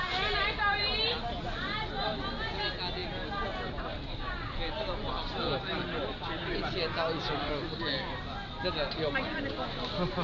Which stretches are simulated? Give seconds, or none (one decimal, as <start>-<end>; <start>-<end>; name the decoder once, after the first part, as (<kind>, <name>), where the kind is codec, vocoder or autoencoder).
none